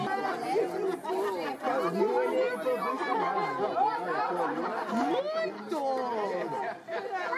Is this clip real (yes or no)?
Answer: yes